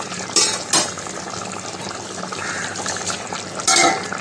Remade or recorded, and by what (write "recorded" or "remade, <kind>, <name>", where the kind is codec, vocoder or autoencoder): recorded